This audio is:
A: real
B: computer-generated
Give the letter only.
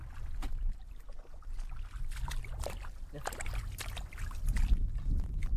A